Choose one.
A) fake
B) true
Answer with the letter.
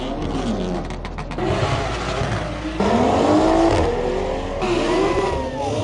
B